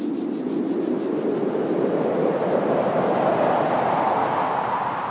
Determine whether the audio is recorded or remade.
recorded